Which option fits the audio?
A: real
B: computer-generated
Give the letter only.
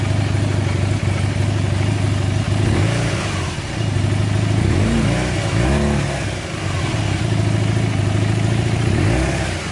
A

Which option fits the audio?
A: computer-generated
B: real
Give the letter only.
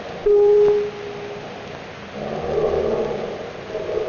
B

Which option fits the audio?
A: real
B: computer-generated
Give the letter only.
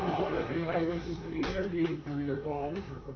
B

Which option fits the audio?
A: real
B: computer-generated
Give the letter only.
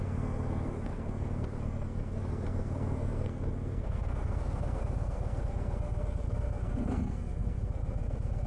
B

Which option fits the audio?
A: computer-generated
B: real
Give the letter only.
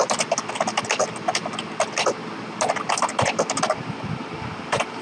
B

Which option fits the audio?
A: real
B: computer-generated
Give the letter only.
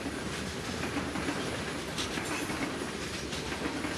A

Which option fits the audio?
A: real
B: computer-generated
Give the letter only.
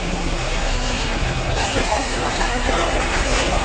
B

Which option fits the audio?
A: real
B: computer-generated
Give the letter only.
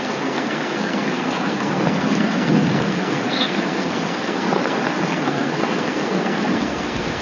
B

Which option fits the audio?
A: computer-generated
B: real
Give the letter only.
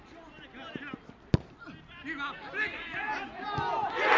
B